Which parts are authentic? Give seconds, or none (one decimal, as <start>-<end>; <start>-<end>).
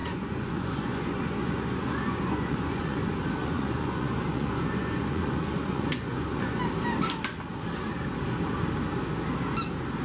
3.0-3.4; 6.6-10.0